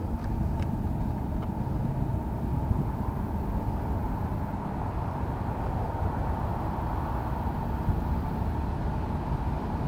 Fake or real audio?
real